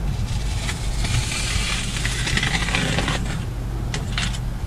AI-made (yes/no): no